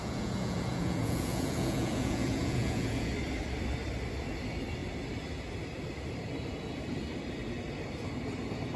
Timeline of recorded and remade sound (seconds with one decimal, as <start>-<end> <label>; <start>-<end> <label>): 0.0-3.1 remade; 3.1-8.8 recorded